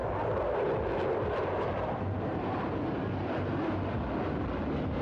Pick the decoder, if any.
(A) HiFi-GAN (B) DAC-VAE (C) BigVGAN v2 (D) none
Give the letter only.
D